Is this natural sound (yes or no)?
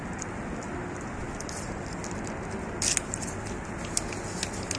yes